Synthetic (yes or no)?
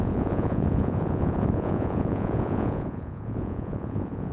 yes